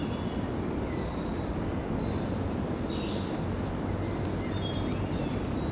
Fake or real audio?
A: real